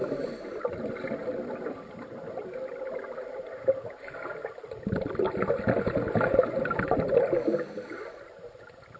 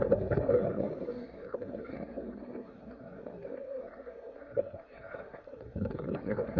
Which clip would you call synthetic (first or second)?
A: second